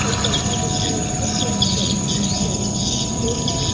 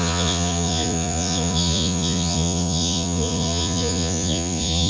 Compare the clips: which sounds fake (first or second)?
second